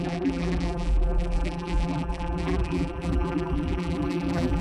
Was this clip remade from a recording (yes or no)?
yes